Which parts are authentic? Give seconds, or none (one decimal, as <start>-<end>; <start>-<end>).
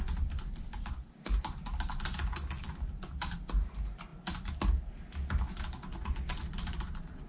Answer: 0.0-7.3